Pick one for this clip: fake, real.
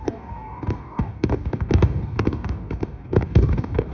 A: fake